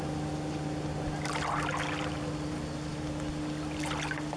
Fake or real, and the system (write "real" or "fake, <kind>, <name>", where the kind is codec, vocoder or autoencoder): real